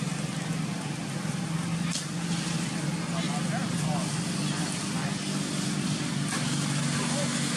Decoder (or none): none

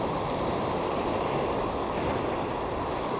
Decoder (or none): none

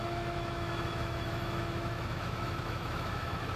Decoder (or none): autoencoder, DAC-VAE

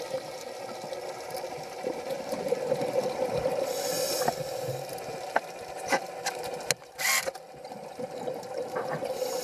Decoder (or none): none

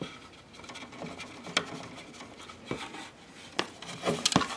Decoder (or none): none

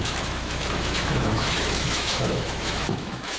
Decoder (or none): autoencoder, DAC-VAE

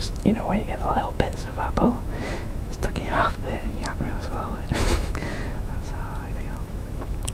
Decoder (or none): autoencoder, DAC-VAE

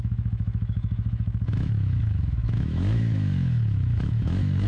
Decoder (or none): autoencoder, DAC-VAE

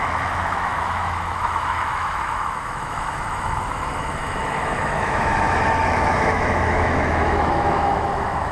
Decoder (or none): autoencoder, DAC-VAE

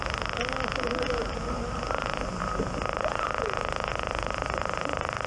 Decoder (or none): none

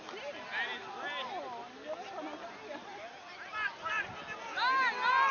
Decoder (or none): none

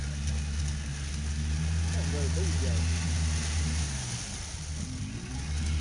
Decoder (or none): none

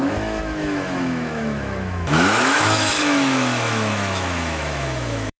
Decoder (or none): autoencoder, DAC-VAE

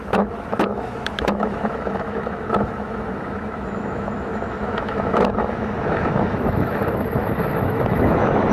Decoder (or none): autoencoder, DAC-VAE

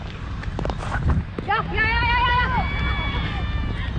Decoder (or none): none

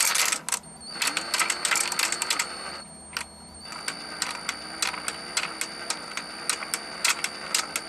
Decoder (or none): none